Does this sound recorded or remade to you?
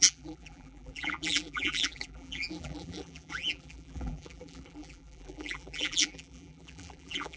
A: remade